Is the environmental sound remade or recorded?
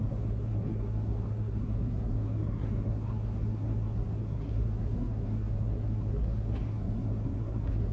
remade